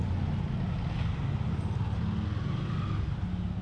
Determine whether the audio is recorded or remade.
recorded